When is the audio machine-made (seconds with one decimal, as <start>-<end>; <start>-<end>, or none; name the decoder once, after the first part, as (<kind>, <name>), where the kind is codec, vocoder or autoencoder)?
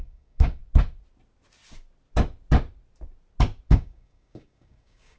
0.0-0.6 (codec, DAC); 3.7-5.2